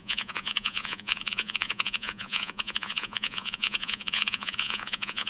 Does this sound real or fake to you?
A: fake